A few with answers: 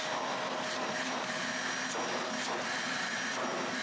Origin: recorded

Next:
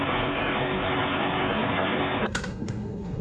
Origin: remade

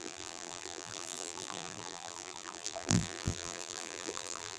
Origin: remade